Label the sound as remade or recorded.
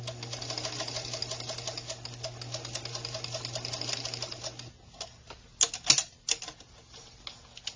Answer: recorded